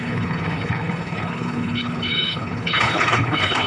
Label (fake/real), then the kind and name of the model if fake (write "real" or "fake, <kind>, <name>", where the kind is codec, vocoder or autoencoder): fake, codec, HILCodec